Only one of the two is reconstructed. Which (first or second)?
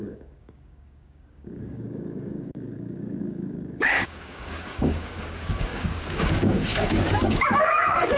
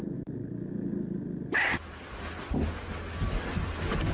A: first